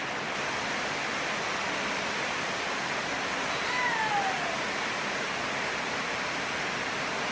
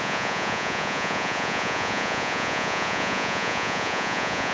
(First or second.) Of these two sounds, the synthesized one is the second